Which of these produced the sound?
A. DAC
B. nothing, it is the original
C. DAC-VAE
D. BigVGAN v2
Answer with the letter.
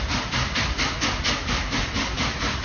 B